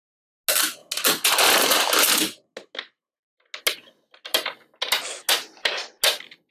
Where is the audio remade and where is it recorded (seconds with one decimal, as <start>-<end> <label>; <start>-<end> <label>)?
0.0-6.5 recorded